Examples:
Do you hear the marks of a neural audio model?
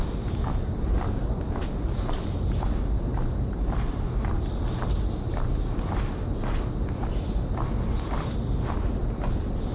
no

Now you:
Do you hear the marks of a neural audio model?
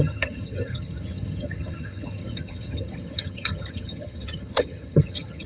yes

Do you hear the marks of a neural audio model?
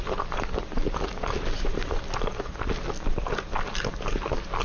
no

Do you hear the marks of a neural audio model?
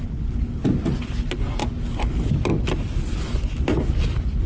no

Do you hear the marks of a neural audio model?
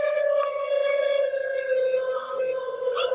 yes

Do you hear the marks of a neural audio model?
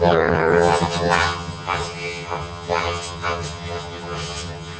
yes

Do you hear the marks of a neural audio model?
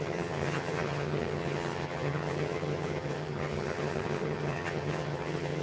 yes